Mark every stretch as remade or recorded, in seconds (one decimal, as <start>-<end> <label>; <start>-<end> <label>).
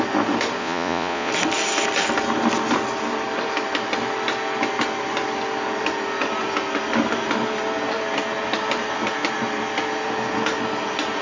0.0-0.6 recorded; 0.6-1.3 remade; 1.3-11.2 recorded